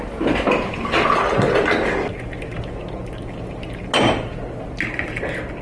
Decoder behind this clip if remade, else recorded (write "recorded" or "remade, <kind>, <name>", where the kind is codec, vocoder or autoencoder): recorded